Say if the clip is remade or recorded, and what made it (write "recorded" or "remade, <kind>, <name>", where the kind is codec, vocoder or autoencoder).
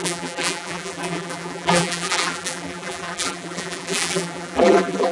remade, vocoder, BigVGAN v2